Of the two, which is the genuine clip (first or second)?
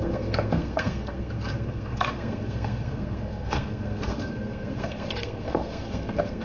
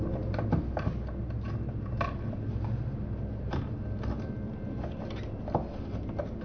second